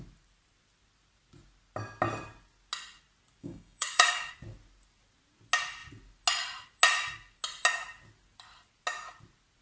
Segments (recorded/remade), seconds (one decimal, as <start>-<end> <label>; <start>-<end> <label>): 0.0-3.4 recorded; 3.4-4.3 remade; 4.3-9.6 recorded